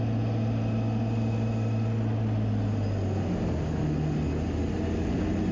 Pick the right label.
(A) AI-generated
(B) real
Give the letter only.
B